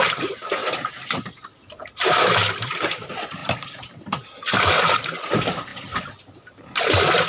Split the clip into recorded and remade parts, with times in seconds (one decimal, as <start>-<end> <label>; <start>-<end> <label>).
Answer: 0.0-0.6 remade; 0.6-1.2 recorded; 1.2-3.4 remade; 3.4-4.7 recorded; 4.7-5.7 remade; 5.7-6.3 recorded; 6.3-7.3 remade